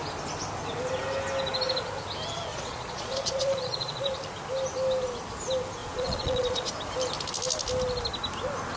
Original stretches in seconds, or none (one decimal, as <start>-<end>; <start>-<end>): 0.0-2.5; 4.2-5.8; 6.7-8.8